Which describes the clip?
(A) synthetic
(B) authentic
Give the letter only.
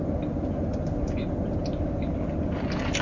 B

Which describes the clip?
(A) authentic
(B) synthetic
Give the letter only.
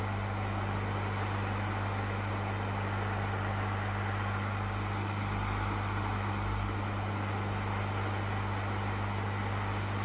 A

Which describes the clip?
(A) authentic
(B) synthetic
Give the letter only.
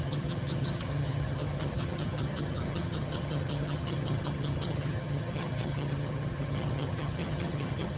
B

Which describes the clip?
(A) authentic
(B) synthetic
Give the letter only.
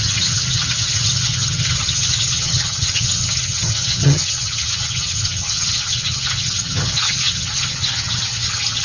B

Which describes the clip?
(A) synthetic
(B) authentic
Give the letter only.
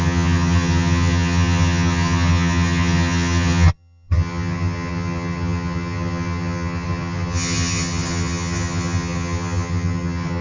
A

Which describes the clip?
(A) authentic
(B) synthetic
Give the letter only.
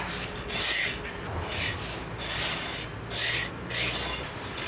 A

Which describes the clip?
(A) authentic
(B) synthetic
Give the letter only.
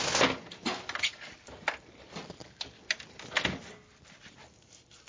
A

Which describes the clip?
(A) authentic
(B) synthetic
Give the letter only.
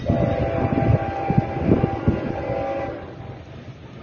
A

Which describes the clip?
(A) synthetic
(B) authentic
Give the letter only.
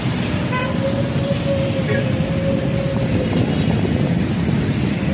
B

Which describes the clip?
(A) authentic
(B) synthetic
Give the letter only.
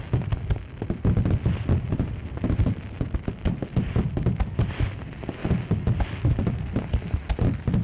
A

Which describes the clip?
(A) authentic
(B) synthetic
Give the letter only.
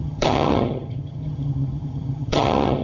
B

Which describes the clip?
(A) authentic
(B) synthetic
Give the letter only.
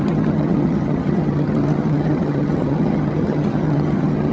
B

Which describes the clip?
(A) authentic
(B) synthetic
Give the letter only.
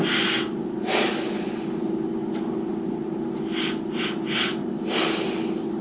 A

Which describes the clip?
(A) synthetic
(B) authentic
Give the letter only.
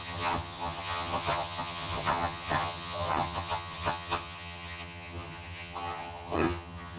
A